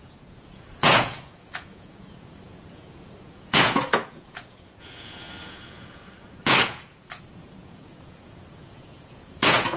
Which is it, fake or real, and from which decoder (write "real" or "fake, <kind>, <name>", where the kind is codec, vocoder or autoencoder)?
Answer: fake, vocoder, Vocos